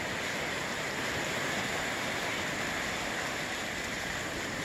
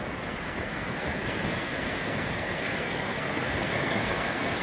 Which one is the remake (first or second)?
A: second